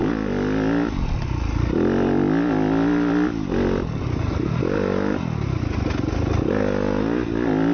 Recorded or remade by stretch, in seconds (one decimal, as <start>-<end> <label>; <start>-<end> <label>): 0.0-7.7 recorded